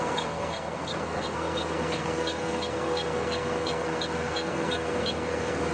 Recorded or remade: remade